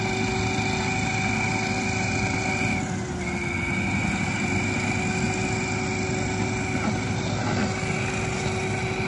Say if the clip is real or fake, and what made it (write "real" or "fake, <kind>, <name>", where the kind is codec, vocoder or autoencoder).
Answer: real